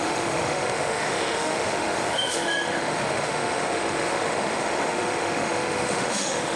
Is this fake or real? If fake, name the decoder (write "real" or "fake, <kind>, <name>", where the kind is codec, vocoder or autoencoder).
fake, autoencoder, DAC-VAE